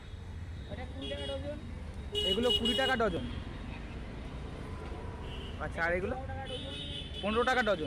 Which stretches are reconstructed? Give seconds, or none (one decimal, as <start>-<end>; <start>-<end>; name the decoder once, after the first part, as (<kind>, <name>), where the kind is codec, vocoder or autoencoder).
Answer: 0.0-0.7 (autoencoder, DAC-VAE)